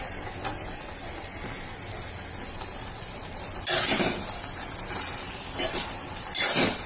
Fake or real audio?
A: real